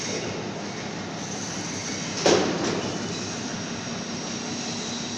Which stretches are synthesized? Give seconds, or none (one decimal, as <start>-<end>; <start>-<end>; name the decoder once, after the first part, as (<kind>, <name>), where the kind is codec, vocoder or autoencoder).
none